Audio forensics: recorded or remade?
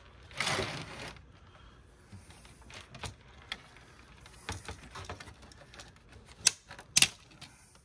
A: recorded